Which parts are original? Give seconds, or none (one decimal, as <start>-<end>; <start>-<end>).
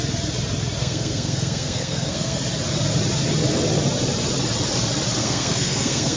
0.0-0.8; 2.4-5.2